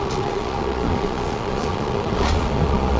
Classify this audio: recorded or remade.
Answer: remade